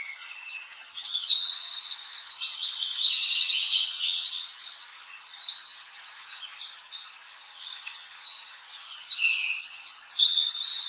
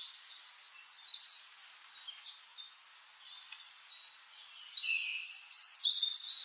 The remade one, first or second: first